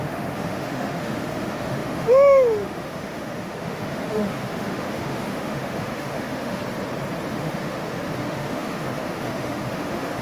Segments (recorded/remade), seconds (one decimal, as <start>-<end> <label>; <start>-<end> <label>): 0.0-6.6 remade; 6.6-7.3 recorded; 7.3-10.2 remade